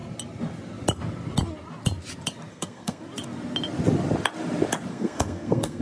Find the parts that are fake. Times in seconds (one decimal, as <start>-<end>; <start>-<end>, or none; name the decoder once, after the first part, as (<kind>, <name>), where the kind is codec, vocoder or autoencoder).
2.5-3.0 (codec, SNAC); 4.9-5.8